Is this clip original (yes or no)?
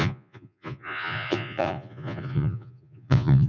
no